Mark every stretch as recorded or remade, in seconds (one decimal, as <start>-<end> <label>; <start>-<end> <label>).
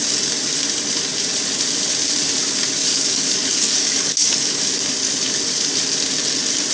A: 0.0-2.8 recorded; 2.8-4.6 remade; 4.6-6.7 recorded